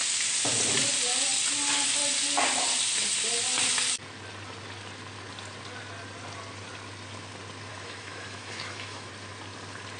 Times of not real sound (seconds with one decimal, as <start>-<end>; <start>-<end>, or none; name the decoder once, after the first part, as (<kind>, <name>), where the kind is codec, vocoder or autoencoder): 7.7-9.1 (autoencoder, DAC-VAE)

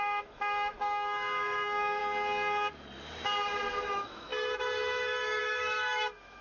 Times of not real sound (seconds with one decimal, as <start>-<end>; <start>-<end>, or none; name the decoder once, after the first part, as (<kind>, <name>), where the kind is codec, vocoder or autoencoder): 0.0-2.0 (autoencoder, DAC-VAE); 3.8-6.4